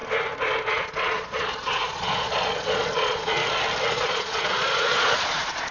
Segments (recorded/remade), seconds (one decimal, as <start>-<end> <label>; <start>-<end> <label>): 0.0-0.7 recorded; 0.7-3.4 remade; 3.4-3.9 recorded; 3.9-5.7 remade